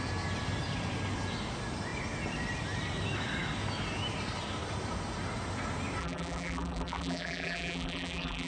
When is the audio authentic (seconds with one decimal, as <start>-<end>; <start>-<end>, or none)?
0.0-6.0